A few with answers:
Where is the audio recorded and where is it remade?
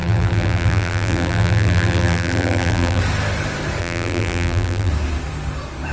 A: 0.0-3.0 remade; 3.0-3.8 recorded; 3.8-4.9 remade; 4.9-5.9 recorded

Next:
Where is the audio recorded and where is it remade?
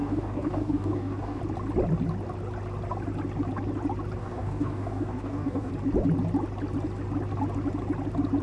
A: 0.0-1.4 remade; 1.4-4.2 recorded; 4.2-5.7 remade; 5.7-8.4 recorded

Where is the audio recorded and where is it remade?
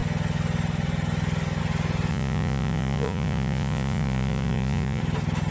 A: 0.0-2.1 recorded; 2.1-5.0 remade; 5.0-5.5 recorded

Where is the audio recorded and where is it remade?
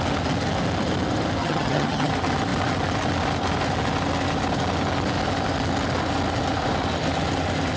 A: 0.0-1.4 recorded; 1.4-2.1 remade; 2.1-7.8 recorded